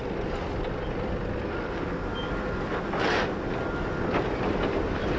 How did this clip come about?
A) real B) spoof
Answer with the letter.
A